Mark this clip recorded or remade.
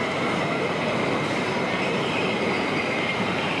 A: remade